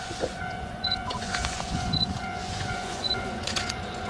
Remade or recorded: remade